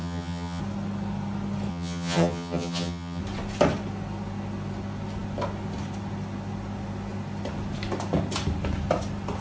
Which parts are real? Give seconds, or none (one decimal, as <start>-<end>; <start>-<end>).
0.6-1.7; 3.2-9.4